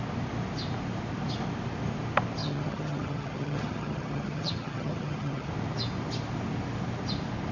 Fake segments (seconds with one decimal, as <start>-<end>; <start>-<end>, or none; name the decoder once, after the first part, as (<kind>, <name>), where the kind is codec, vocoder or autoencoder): 2.4-5.5 (vocoder, HiFi-GAN)